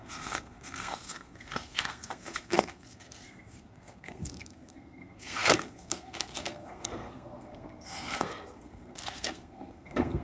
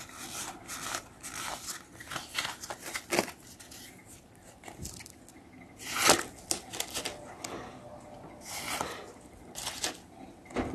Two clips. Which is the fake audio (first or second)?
first